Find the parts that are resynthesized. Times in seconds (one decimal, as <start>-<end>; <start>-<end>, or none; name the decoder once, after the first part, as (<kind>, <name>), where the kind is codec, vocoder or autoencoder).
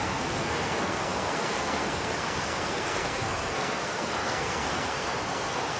0.0-5.8 (codec, SNAC)